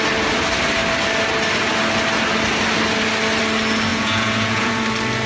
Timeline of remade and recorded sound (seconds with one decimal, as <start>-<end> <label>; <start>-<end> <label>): 0.0-3.9 recorded; 3.9-4.7 remade; 4.7-5.3 recorded